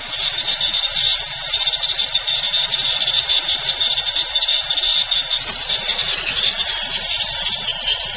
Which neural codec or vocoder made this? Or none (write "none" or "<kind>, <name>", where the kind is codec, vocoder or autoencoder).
vocoder, BigVGAN v2